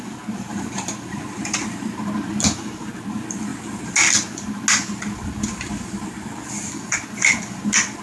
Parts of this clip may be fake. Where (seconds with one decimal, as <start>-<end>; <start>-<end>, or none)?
0.5-2.0

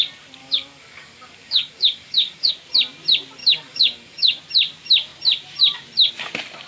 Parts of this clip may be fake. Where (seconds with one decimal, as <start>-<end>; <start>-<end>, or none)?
0.4-2.5; 3.4-4.4

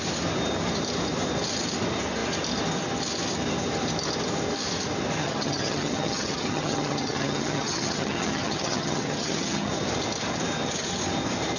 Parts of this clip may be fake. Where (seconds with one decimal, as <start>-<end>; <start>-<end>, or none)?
5.2-9.7

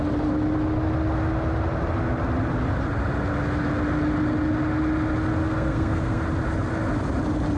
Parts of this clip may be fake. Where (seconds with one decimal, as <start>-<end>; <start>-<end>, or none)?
5.4-6.2

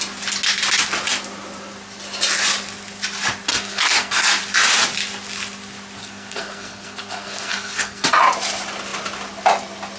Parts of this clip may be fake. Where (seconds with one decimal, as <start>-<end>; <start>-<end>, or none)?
3.5-4.4; 6.0-8.1

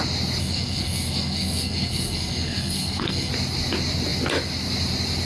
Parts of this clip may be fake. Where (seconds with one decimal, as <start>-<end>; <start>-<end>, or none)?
0.4-3.3

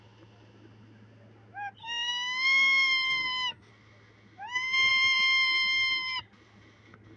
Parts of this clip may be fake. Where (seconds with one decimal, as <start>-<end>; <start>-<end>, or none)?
1.8-3.7